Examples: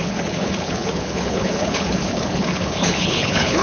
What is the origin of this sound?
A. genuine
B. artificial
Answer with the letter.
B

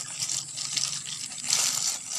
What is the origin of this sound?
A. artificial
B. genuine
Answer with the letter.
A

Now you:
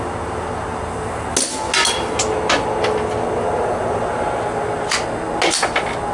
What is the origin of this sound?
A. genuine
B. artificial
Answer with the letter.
A